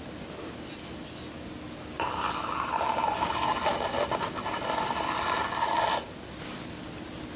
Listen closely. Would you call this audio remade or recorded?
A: recorded